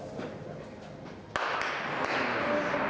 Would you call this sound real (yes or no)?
yes